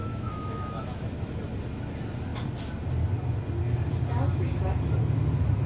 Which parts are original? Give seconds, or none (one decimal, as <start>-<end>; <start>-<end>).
1.3-5.7